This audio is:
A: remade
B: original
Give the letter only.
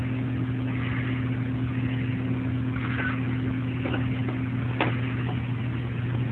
B